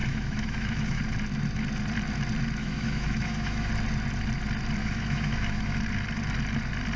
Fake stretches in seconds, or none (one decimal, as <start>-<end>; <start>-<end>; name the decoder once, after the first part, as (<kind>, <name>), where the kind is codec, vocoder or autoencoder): 0.0-1.0 (autoencoder, DAC-VAE); 2.6-3.7; 4.8-5.8